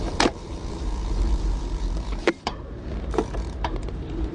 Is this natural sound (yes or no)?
no